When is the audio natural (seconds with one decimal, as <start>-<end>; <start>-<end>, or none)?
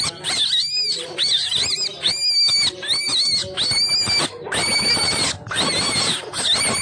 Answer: 0.0-6.8